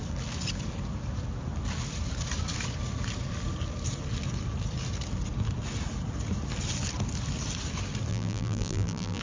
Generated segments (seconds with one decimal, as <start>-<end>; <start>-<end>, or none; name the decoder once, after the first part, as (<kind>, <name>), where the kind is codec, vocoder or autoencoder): 8.1-9.2 (vocoder, BigVGAN v2)